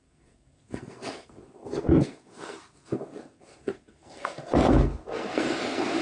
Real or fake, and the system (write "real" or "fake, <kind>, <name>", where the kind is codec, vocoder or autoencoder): fake, codec, SNAC